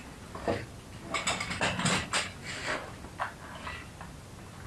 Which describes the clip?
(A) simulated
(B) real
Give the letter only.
B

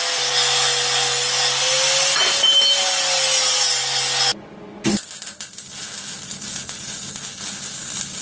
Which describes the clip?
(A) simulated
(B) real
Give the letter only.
B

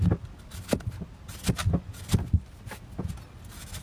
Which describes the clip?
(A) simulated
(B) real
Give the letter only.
B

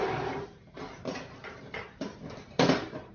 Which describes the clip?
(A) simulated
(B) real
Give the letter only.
A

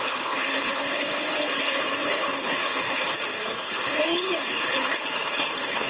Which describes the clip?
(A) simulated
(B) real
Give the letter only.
A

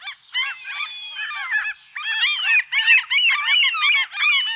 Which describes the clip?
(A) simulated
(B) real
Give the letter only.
B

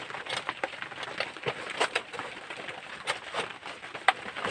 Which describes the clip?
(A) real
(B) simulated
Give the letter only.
A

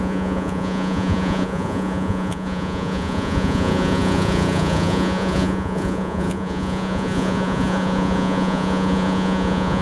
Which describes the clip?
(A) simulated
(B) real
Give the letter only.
A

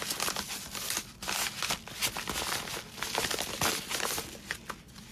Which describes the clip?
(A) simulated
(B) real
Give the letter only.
B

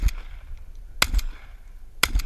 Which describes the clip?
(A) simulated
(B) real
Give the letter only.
B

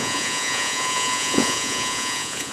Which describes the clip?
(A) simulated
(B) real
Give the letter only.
A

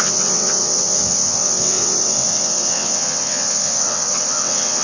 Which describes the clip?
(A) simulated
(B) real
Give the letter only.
A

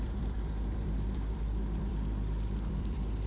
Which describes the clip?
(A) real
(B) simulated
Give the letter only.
B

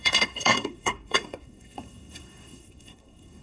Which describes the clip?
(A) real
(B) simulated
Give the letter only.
B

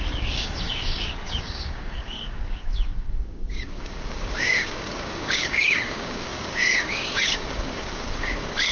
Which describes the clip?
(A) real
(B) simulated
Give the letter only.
B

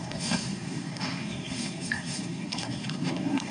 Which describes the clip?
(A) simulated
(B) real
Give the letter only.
A